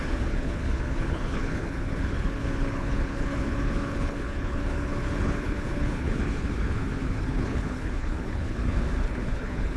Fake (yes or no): yes